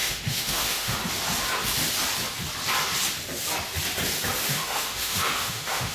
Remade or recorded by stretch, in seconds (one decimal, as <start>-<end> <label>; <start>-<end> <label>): 0.0-1.0 remade; 1.0-4.5 recorded; 4.5-5.9 remade